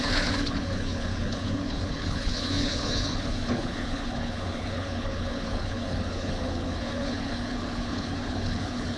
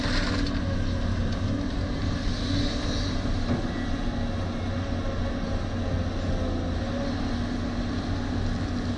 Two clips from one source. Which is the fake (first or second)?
first